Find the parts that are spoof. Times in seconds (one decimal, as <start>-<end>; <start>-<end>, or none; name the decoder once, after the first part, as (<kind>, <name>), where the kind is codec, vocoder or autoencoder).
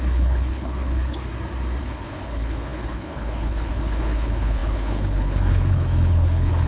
0.0-1.3 (codec, HILCodec); 1.8-6.7